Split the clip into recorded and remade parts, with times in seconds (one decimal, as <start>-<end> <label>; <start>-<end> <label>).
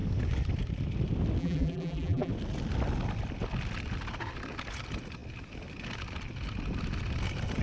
0.0-1.4 recorded; 1.4-2.3 remade; 2.3-7.6 recorded